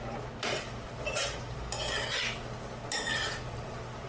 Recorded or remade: recorded